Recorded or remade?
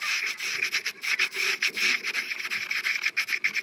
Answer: recorded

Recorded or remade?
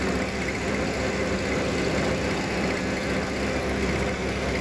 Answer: recorded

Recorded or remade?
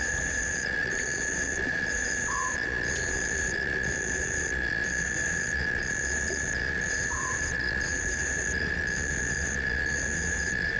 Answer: remade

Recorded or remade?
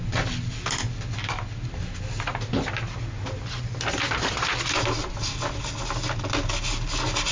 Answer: recorded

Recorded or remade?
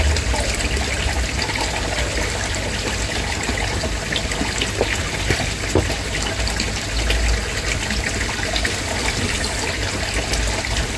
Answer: recorded